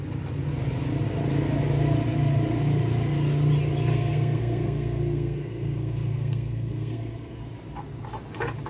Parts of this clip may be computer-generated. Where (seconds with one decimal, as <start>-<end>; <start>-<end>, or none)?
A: 3.9-7.4